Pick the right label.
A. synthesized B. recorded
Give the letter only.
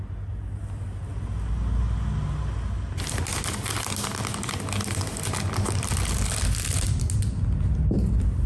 B